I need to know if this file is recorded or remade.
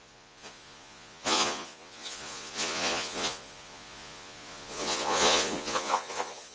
remade